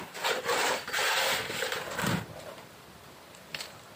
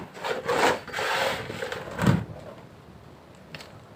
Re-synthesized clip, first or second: first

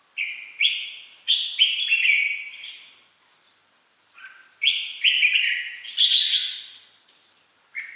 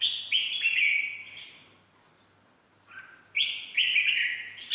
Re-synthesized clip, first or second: first